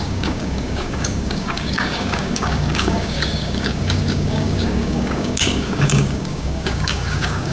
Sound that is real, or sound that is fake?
fake